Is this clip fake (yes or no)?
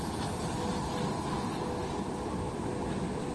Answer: no